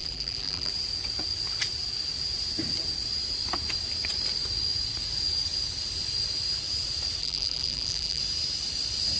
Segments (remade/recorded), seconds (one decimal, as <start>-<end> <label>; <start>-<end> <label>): 0.0-0.7 remade; 0.7-7.2 recorded; 7.2-8.2 remade; 8.2-9.2 recorded